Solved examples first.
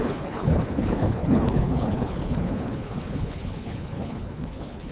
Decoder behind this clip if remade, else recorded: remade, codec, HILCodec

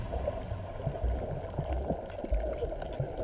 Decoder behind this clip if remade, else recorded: recorded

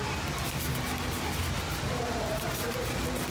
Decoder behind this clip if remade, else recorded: recorded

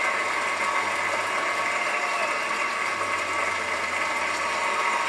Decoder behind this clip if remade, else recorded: recorded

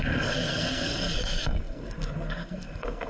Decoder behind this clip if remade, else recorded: remade, codec, SNAC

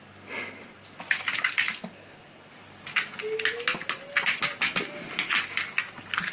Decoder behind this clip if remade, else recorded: recorded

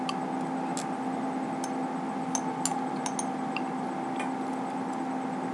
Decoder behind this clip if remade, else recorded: recorded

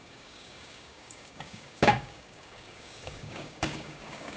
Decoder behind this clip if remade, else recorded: remade, codec, DAC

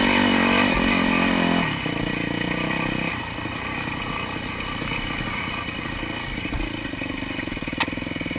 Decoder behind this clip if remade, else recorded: recorded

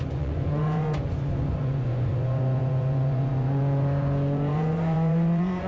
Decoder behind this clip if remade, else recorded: remade, vocoder, Vocos